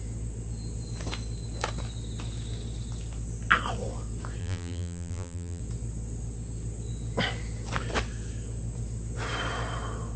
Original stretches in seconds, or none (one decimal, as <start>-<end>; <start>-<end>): 0.0-4.4; 5.6-10.2